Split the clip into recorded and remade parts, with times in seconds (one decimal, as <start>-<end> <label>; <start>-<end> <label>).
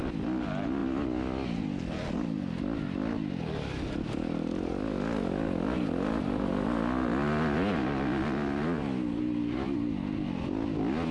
0.0-11.1 recorded